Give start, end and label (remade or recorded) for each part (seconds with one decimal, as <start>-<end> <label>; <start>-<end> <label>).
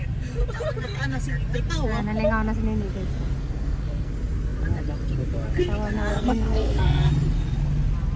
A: 0.0-3.4 recorded; 3.4-4.1 remade; 4.1-6.1 recorded; 6.1-7.1 remade; 7.1-8.2 recorded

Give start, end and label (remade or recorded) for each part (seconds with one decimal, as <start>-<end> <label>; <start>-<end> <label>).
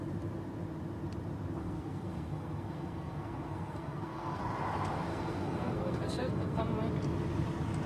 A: 0.0-1.6 recorded; 1.6-4.4 remade; 4.4-5.1 recorded; 5.1-6.6 remade; 6.6-7.9 recorded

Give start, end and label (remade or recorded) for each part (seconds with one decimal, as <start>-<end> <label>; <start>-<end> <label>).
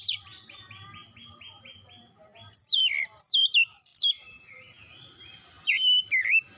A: 0.0-6.6 recorded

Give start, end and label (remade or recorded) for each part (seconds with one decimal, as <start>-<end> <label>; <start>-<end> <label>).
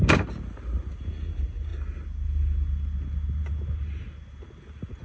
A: 0.0-5.0 recorded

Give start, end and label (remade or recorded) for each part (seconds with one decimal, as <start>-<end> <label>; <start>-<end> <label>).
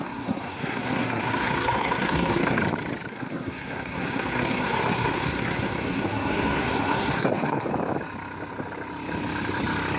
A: 0.0-2.6 remade; 2.6-3.1 recorded; 3.1-7.7 remade; 7.7-10.0 recorded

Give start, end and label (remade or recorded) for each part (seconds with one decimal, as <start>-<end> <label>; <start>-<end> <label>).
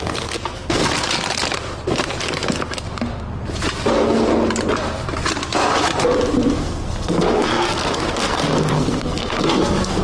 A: 0.0-0.8 remade; 0.8-3.9 recorded; 3.9-4.3 remade; 4.3-6.5 recorded; 6.5-10.0 remade